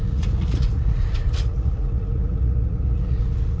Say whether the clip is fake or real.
fake